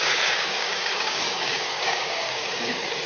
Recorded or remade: remade